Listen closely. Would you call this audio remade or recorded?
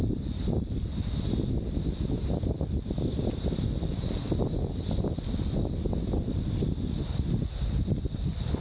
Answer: recorded